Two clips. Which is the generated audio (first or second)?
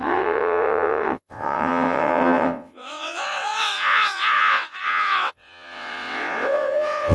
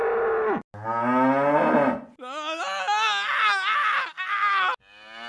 first